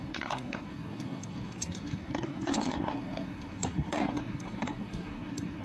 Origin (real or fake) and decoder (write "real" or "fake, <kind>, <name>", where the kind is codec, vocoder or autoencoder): fake, codec, SNAC